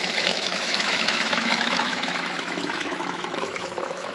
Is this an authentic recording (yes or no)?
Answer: no